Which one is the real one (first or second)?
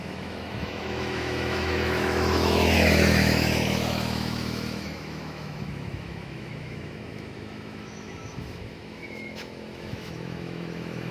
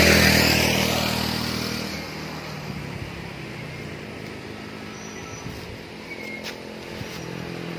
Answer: second